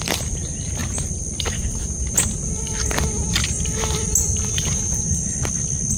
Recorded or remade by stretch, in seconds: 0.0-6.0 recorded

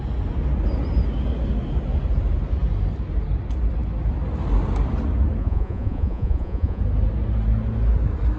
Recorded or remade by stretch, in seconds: 0.0-5.4 recorded; 5.4-6.8 remade; 6.8-8.4 recorded